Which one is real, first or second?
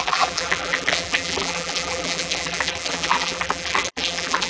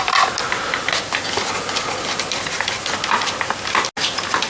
second